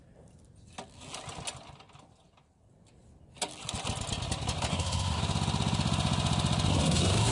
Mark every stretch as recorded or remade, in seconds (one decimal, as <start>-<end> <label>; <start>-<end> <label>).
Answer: 0.0-4.7 recorded; 4.7-5.2 remade; 5.2-6.7 recorded; 6.7-7.3 remade